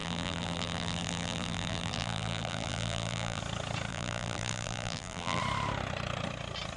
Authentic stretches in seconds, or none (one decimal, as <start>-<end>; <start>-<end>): 3.4-3.9; 5.4-6.8